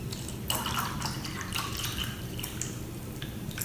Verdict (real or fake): real